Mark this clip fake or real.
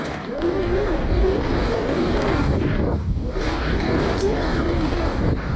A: fake